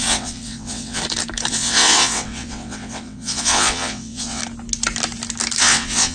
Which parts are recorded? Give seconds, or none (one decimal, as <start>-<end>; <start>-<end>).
1.0-1.5; 4.4-5.6